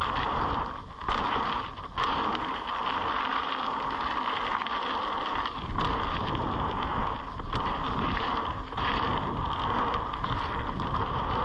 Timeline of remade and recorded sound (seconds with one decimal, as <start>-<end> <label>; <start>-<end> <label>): 0.0-6.9 recorded; 6.9-11.4 remade